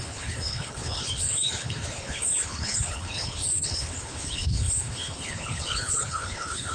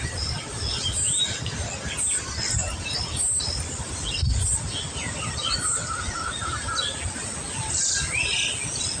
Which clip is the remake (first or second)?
first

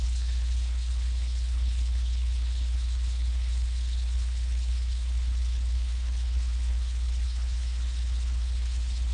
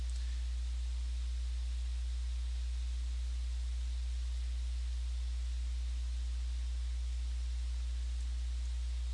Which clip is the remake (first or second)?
first